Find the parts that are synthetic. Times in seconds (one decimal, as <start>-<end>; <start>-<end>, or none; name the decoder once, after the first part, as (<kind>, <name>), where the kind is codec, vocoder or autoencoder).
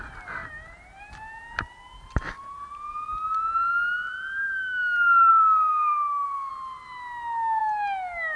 5.3-6.5 (codec, SNAC)